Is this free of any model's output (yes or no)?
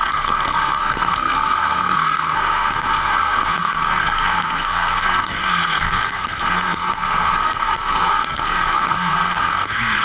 no